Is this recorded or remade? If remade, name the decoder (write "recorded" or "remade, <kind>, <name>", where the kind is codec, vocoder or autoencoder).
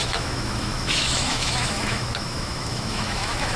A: remade, autoencoder, DAC-VAE